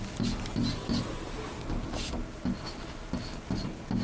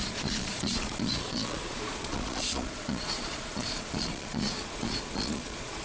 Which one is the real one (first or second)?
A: first